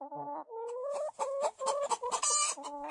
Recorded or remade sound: recorded